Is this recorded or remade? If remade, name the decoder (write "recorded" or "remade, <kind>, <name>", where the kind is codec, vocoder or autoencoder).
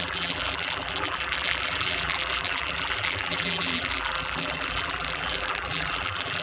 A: remade, vocoder, BigVGAN v2